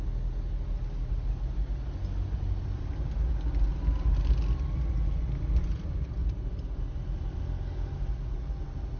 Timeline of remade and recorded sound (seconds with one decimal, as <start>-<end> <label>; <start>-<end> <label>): 0.0-6.2 recorded; 6.2-7.4 remade; 7.4-9.0 recorded